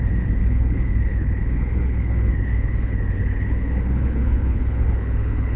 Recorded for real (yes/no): no